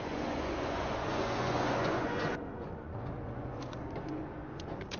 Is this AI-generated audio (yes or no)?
yes